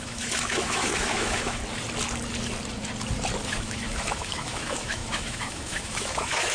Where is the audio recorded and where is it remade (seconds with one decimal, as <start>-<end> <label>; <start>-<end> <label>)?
0.0-1.6 remade; 1.6-3.5 recorded; 3.5-6.5 remade